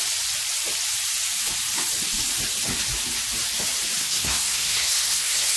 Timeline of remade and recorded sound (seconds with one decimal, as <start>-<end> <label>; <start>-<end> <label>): 0.0-4.0 recorded; 4.0-5.6 remade